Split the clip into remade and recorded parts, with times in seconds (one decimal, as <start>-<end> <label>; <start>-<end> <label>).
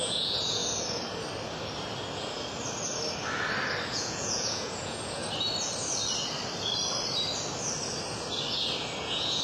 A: 0.0-0.6 remade; 0.6-3.9 recorded; 3.9-5.2 remade; 5.2-9.0 recorded; 9.0-9.4 remade